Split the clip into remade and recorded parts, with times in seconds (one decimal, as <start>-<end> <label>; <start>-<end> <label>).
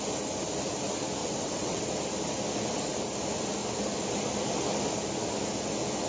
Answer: 0.0-1.2 recorded; 1.2-1.9 remade; 1.9-6.1 recorded